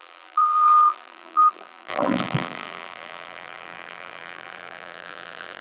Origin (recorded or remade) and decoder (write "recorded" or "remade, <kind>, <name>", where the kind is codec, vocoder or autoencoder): remade, vocoder, BigVGAN v2